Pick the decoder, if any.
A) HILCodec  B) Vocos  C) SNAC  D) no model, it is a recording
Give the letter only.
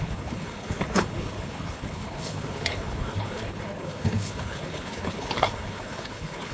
A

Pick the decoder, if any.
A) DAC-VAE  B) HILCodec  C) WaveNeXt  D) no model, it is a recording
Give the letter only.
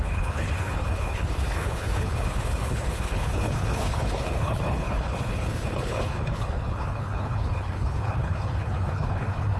B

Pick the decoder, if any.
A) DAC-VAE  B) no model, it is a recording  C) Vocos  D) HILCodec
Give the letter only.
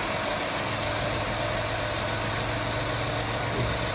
B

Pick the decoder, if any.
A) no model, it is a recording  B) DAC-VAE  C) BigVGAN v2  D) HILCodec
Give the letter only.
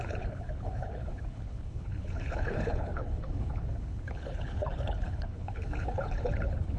D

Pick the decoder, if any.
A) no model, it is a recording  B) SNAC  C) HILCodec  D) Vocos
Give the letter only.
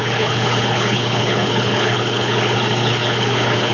C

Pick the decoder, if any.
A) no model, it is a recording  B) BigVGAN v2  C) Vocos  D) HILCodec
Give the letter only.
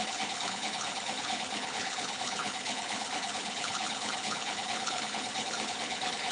D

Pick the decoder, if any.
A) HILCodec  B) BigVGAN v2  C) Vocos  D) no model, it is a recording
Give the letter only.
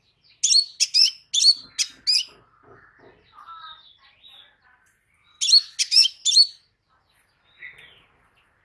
D